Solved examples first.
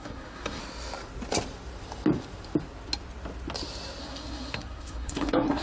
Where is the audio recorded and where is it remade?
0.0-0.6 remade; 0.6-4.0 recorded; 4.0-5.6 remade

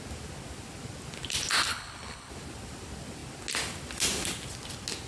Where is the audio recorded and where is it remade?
0.0-1.7 recorded; 1.7-2.3 remade; 2.3-5.1 recorded